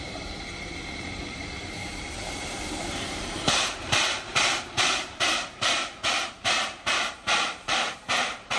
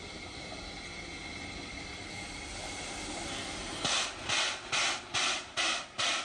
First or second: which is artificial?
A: first